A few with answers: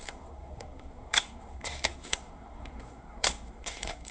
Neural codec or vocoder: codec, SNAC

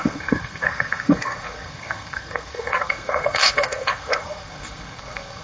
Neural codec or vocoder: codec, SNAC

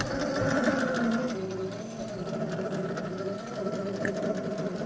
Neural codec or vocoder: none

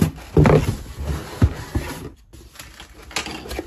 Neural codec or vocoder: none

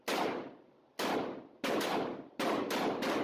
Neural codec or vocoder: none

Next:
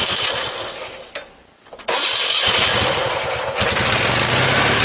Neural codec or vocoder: none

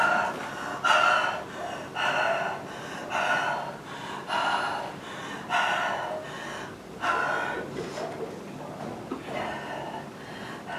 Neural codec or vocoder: none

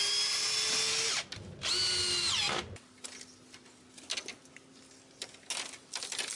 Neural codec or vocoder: none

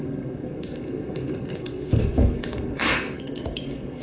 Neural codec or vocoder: codec, SNAC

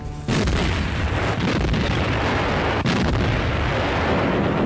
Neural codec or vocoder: none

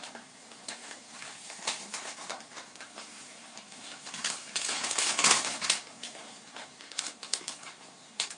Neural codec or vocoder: codec, SNAC